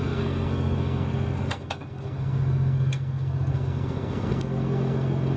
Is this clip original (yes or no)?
no